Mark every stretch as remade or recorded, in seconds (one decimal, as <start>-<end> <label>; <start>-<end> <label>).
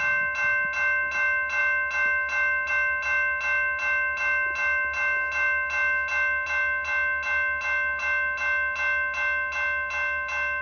0.0-10.6 recorded